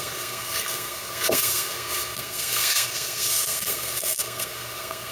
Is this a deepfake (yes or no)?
yes